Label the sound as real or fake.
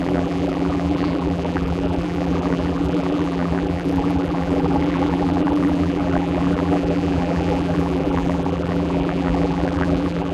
fake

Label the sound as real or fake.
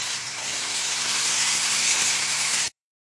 fake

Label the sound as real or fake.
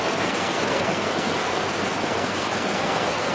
fake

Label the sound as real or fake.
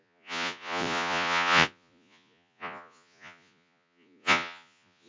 fake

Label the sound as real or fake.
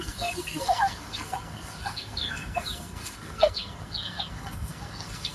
fake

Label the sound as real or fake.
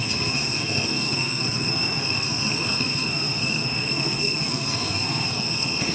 fake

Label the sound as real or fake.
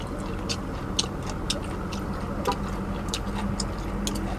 real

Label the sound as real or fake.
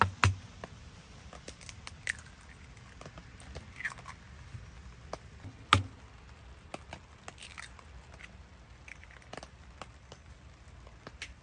real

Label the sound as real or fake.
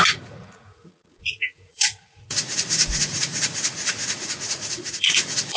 fake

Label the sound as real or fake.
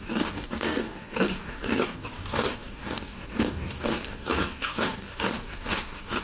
fake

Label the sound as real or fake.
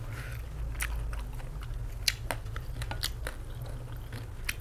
real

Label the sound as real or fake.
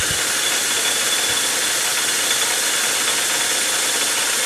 real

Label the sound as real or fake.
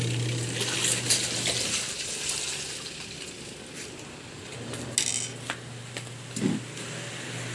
real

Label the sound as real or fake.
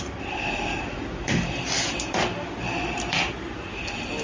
fake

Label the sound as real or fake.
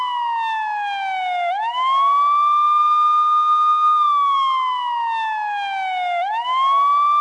real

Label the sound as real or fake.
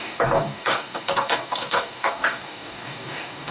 fake